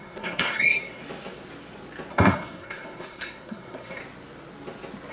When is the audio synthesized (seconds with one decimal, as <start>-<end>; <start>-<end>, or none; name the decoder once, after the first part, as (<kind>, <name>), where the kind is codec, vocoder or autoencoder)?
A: 0.0-1.0 (codec, SNAC); 2.1-4.0